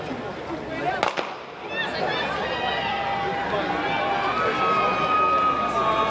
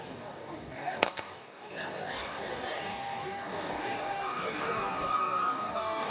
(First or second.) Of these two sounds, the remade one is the second